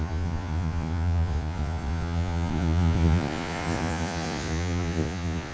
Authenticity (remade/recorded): remade